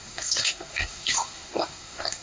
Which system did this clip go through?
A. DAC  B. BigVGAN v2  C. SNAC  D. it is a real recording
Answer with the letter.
C